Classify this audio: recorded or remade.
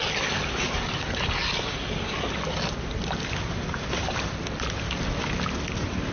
recorded